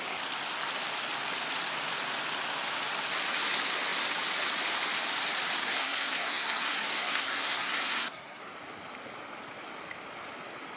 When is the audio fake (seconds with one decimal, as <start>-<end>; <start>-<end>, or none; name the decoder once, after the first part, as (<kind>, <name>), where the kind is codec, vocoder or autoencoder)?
5.6-8.4 (codec, SNAC)